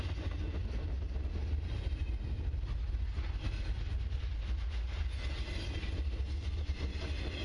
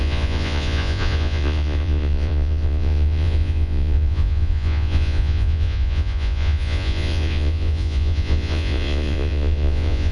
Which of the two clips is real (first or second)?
first